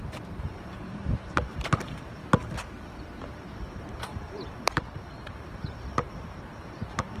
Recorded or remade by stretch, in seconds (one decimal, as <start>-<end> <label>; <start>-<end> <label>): 0.0-2.2 remade; 2.2-3.2 recorded; 3.2-7.2 remade

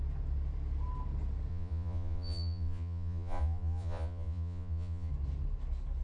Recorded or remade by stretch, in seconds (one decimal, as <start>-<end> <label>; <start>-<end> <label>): 0.0-1.5 recorded; 1.5-5.1 remade; 5.1-6.0 recorded

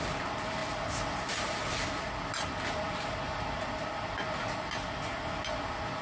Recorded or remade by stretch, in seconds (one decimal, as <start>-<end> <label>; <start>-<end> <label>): 0.0-6.0 recorded

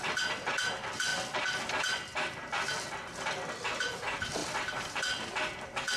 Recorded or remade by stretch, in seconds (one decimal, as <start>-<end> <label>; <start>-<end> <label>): 0.0-1.1 recorded; 1.1-3.3 remade; 3.3-4.4 recorded; 4.4-5.0 remade; 5.0-6.0 recorded